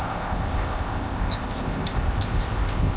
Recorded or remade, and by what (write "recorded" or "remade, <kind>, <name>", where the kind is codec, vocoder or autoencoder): remade, codec, ZipCodec